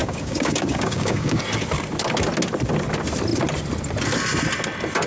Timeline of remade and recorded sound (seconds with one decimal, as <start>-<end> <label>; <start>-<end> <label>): 0.0-1.4 remade; 1.4-5.1 recorded